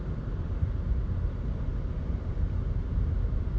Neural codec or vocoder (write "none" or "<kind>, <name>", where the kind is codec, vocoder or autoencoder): none